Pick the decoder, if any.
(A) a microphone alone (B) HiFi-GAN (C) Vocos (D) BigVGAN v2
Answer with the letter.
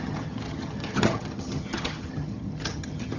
B